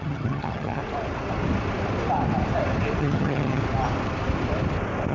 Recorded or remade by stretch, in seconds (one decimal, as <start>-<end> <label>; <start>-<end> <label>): 0.0-0.8 remade; 0.8-3.0 recorded; 3.0-3.6 remade; 3.6-5.1 recorded